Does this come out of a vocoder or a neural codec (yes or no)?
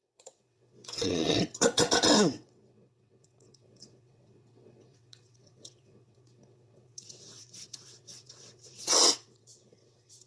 yes